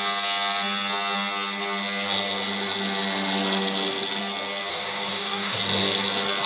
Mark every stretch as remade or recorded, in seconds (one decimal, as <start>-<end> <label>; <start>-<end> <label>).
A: 0.0-4.7 recorded; 4.7-5.6 remade; 5.6-6.5 recorded